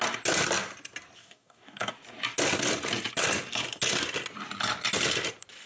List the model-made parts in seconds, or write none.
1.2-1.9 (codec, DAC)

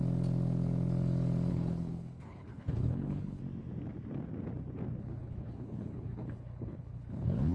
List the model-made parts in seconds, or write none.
1.5-3.4 (codec, HILCodec); 5.0-7.5

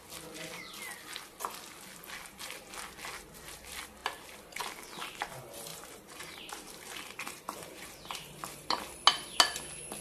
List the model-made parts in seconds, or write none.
5.7-8.8 (vocoder, BigVGAN v2)

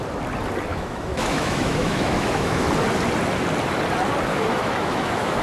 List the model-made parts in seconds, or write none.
0.7-2.7 (autoencoder, DAC-VAE); 4.3-5.4

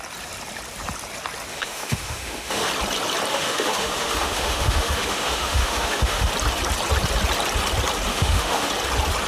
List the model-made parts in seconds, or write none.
1.5-2.7 (autoencoder, DAC-VAE); 3.3-6.3; 8.1-8.7

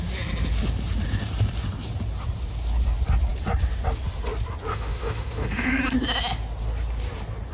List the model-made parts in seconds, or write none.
4.7-5.8 (autoencoder, DAC-VAE)